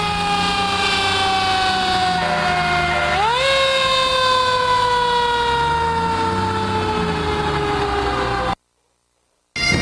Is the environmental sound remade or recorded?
recorded